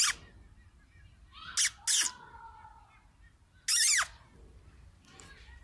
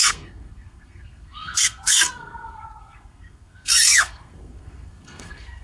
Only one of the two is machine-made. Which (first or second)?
second